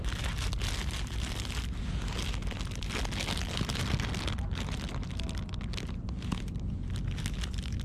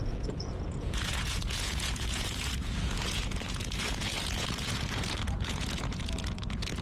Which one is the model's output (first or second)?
second